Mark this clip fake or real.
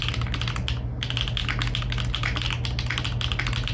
real